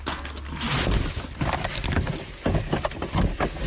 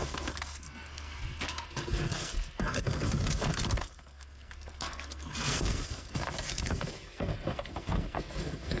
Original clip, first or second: first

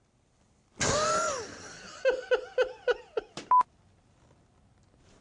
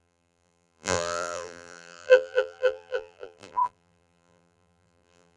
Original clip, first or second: first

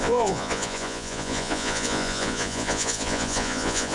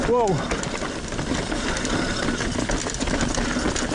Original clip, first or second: second